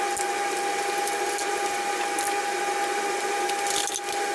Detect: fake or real real